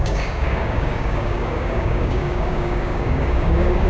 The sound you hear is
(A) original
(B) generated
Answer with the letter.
B